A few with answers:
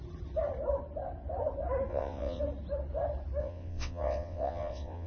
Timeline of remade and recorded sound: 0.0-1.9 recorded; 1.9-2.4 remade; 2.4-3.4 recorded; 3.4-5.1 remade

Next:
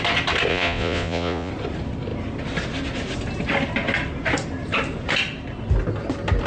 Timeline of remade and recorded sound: 0.0-0.5 recorded; 0.5-1.5 remade; 1.5-6.5 recorded

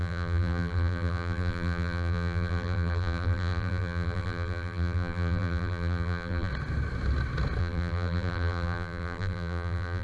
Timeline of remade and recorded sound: 0.0-6.5 remade; 6.5-7.6 recorded; 7.6-10.0 remade

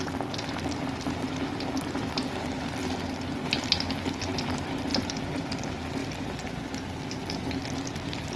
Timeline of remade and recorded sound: 0.0-8.4 recorded